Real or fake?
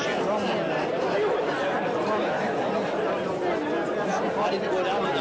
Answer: real